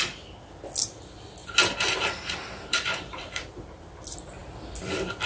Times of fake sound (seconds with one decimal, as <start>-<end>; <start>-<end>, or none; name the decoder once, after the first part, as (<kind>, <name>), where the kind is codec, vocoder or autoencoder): 1.4-3.9 (vocoder, BigVGAN v2)